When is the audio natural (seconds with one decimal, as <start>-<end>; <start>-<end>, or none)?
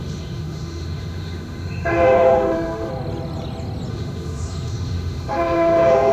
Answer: 2.9-3.9